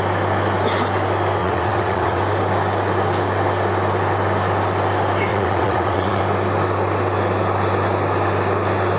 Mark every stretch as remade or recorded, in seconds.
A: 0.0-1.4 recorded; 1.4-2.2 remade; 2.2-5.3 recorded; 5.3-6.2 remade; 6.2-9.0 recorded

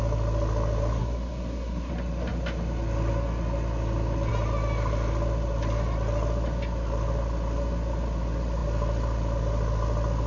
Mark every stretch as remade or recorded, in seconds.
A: 0.0-1.0 recorded; 1.0-1.9 remade; 1.9-10.3 recorded